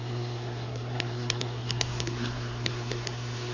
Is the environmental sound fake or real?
fake